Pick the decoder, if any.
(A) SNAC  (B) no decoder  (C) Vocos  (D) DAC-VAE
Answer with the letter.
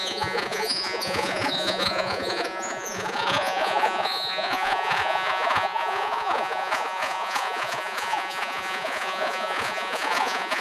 C